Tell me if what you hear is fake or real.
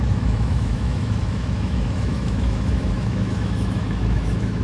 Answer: fake